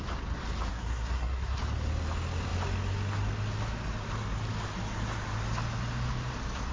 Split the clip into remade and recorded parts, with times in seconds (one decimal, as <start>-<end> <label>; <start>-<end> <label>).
0.0-0.7 recorded; 0.7-1.6 remade; 1.6-6.7 recorded